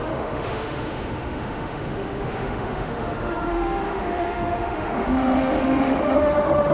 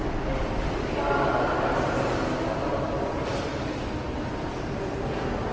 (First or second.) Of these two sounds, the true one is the second